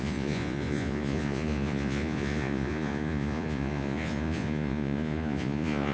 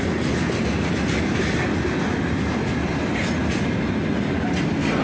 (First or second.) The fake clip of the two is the first